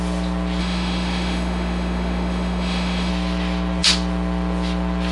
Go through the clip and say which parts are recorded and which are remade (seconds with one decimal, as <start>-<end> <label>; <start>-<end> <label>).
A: 0.0-0.6 recorded; 0.6-3.1 remade; 3.1-5.1 recorded